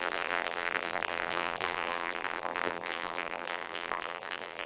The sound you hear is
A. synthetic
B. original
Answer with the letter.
A